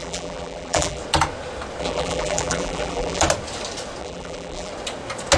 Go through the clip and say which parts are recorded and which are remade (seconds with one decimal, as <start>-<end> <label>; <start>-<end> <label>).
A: 0.0-1.0 remade; 1.0-1.8 recorded; 1.8-3.2 remade; 3.2-4.0 recorded; 4.0-4.7 remade; 4.7-5.4 recorded